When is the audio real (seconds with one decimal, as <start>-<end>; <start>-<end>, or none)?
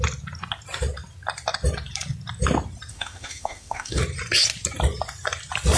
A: 0.0-2.9; 4.0-5.8